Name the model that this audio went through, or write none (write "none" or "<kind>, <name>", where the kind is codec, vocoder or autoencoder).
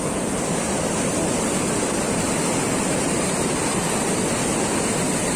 none